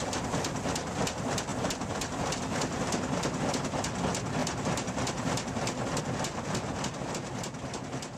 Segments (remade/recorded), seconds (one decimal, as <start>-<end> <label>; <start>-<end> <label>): 0.0-8.2 recorded